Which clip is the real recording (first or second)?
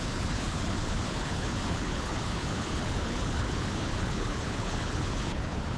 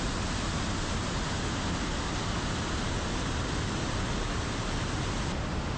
second